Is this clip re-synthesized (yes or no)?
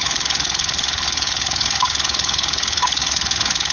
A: yes